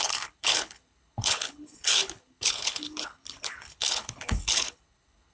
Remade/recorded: remade